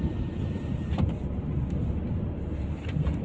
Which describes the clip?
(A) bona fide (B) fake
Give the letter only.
A